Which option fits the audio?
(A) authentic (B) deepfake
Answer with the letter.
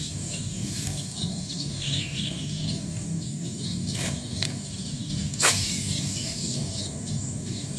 B